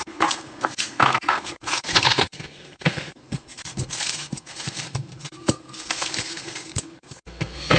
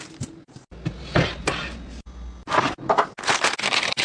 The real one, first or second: second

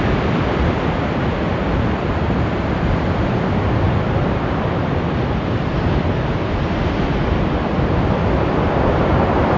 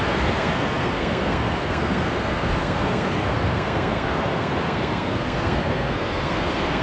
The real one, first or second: first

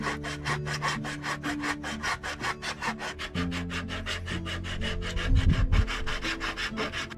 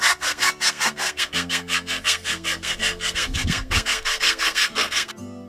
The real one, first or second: first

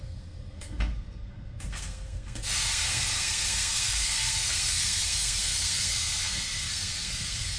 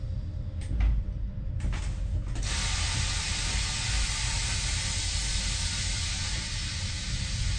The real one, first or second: second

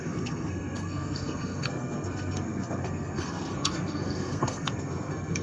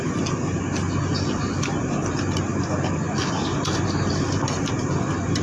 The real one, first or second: second